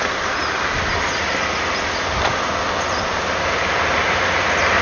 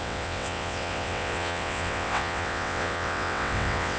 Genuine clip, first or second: first